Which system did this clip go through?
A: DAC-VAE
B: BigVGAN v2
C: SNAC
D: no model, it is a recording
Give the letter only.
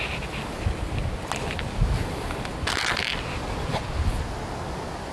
D